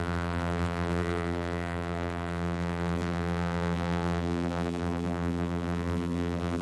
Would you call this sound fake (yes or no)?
yes